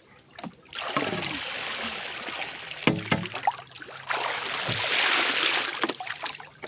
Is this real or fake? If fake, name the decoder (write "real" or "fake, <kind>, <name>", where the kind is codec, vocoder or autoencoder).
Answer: real